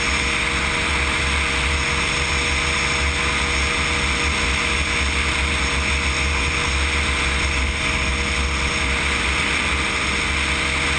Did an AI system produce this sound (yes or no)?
no